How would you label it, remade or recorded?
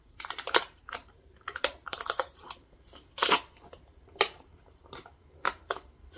remade